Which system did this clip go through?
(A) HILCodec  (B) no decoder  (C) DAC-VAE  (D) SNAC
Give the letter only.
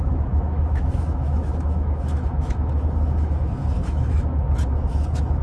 C